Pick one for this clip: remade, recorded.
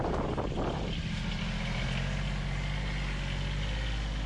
recorded